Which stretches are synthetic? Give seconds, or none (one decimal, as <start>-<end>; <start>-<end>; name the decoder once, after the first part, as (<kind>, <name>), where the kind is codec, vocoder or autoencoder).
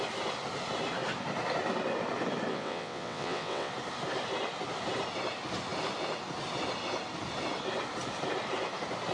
2.5-3.7 (vocoder, WaveNeXt)